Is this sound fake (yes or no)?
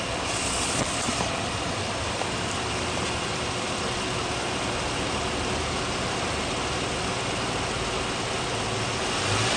yes